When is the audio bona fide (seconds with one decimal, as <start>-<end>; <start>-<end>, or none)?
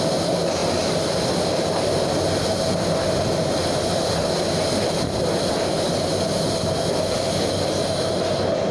0.0-8.7